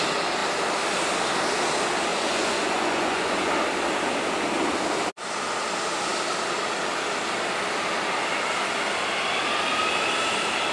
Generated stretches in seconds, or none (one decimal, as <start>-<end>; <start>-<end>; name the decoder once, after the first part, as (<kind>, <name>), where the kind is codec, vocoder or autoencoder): 2.1-3.5 (vocoder, Vocos)